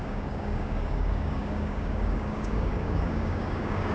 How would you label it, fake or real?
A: fake